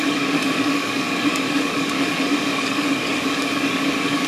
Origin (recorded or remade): remade